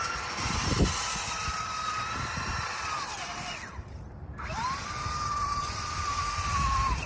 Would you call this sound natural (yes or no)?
yes